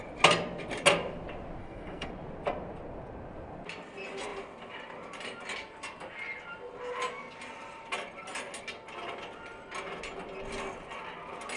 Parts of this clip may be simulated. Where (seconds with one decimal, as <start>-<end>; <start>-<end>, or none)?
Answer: 1.6-2.1